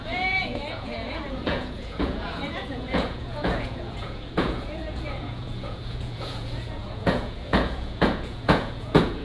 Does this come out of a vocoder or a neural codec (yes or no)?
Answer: yes